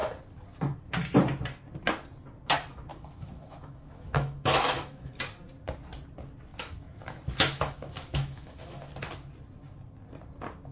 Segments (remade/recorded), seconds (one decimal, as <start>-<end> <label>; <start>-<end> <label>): 0.0-2.9 recorded; 2.9-5.2 remade; 5.2-6.5 recorded; 6.5-8.9 remade; 8.9-10.7 recorded